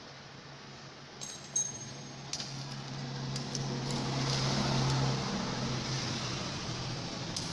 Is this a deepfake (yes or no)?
no